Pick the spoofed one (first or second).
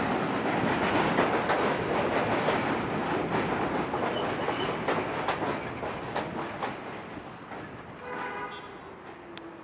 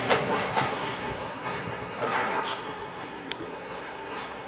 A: second